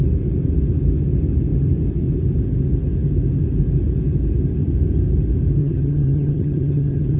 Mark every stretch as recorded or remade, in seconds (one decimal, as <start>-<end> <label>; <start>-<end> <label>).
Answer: 0.0-5.6 recorded; 5.6-7.2 remade